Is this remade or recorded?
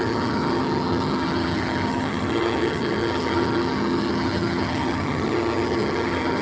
remade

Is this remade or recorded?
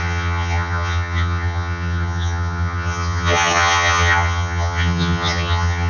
remade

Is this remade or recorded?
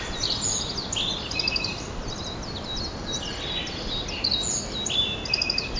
recorded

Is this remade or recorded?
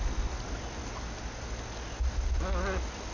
recorded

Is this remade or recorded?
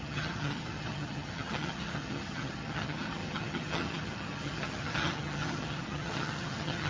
remade